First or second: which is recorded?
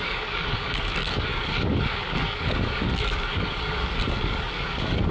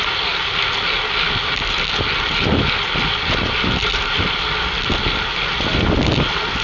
second